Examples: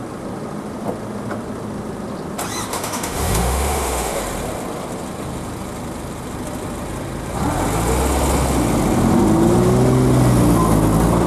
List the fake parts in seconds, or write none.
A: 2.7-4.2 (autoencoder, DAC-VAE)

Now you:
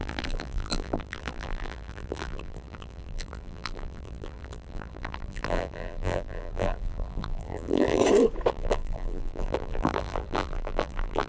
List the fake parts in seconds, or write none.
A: 0.0-8.0 (vocoder, BigVGAN v2); 8.5-11.3

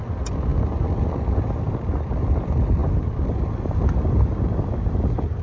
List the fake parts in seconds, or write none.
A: none

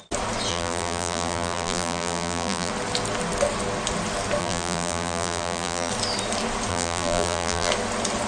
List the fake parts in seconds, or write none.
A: 0.5-2.7 (vocoder, BigVGAN v2); 4.4-5.9; 6.7-7.7

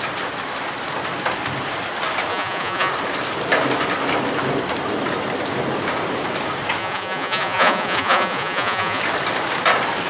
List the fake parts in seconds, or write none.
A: 2.3-2.9 (vocoder, Vocos); 6.8-9.0

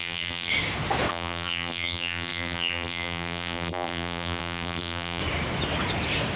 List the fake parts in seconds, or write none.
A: 0.0-0.5 (vocoder, BigVGAN v2); 1.1-5.2